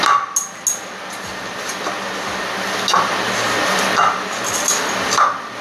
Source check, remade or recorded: recorded